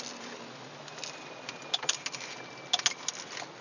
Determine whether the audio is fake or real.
real